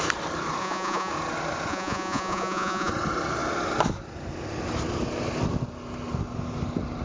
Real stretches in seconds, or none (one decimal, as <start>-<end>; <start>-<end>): 0.0-0.6; 1.1-1.7; 2.9-7.0